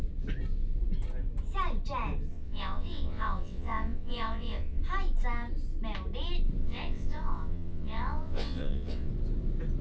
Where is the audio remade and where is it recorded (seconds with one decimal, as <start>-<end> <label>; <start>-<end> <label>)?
0.0-2.3 recorded; 2.3-4.8 remade; 4.8-6.6 recorded; 6.6-9.1 remade; 9.1-9.8 recorded